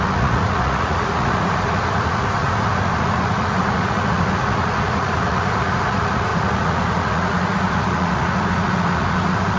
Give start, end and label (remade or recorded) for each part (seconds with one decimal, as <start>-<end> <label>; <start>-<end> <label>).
0.0-9.6 remade